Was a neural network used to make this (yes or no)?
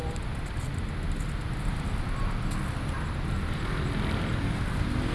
no